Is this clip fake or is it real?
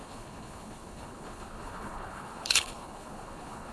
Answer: fake